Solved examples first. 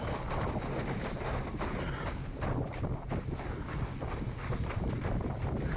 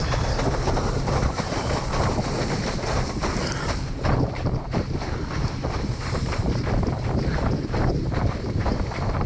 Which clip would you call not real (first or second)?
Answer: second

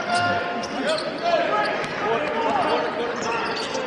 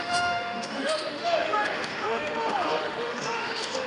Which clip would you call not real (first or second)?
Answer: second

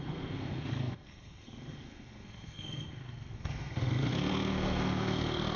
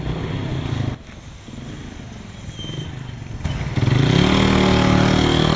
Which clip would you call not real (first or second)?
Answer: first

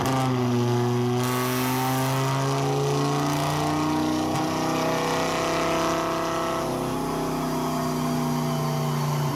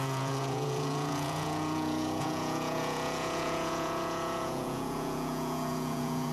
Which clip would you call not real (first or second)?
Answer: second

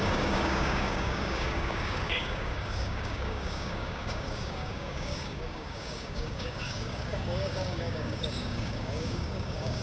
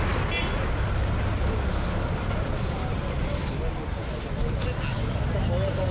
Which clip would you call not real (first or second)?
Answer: first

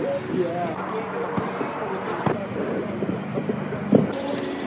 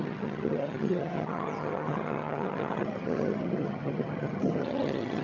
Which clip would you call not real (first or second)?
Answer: second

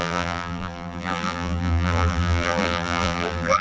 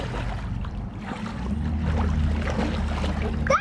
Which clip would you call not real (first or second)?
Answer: first